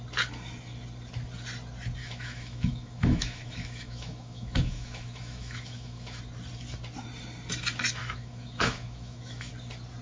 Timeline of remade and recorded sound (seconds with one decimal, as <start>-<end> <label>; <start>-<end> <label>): 0.0-2.0 recorded; 2.0-6.2 remade; 6.2-8.0 recorded; 8.0-9.5 remade; 9.5-10.0 recorded